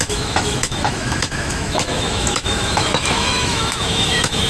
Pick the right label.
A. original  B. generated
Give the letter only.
B